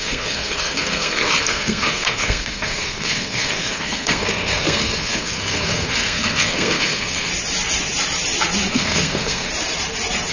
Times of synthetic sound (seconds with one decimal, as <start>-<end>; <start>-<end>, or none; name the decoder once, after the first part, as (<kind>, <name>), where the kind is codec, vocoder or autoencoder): 0.0-7.3 (codec, SNAC); 8.7-9.5